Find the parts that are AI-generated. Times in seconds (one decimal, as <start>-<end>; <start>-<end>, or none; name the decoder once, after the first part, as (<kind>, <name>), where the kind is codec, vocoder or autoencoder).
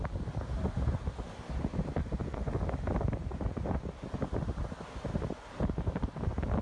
2.0-2.5 (vocoder, Vocos)